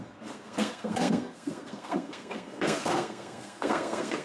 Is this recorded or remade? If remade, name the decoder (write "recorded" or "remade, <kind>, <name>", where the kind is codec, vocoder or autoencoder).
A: remade, codec, SNAC